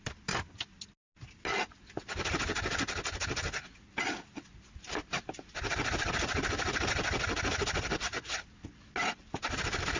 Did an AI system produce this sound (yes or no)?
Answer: no